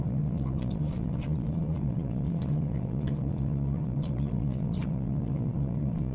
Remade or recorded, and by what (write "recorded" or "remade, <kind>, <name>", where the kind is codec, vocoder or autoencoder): remade, vocoder, Vocos